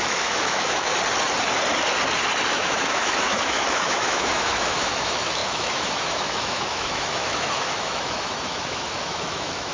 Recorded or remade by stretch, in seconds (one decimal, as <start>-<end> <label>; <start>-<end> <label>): 0.0-0.9 remade; 0.9-2.5 recorded; 2.5-9.7 remade